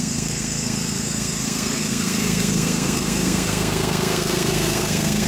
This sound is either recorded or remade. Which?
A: remade